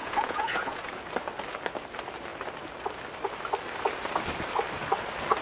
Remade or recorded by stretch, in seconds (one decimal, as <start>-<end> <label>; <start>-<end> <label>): 0.0-0.9 remade; 0.9-5.4 recorded